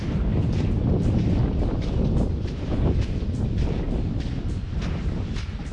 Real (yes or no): yes